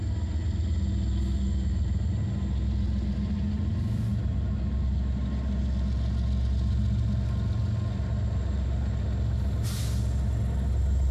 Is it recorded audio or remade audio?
recorded